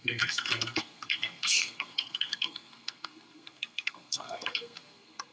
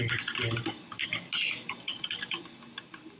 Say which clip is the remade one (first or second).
first